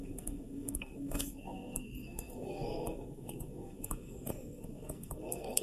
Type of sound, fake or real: fake